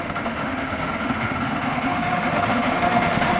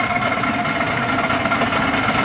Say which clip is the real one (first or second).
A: second